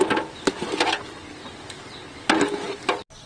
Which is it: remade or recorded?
recorded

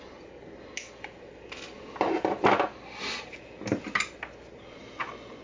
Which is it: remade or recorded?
recorded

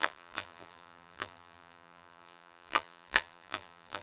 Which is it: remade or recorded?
remade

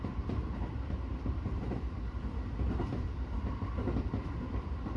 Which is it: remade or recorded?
remade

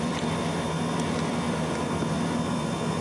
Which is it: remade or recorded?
remade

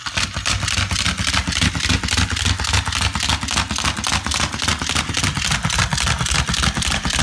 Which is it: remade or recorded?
recorded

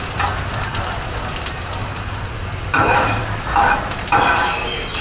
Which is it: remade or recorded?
remade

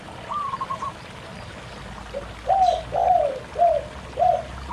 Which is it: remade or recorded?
recorded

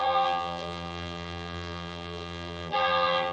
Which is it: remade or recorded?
remade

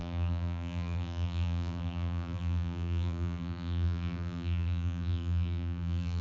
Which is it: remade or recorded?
remade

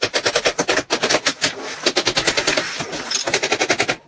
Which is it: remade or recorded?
recorded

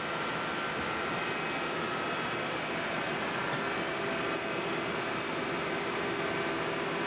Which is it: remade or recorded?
recorded